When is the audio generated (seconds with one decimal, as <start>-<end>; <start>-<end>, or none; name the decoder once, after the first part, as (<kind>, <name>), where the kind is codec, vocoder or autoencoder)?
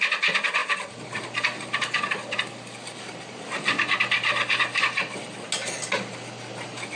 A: none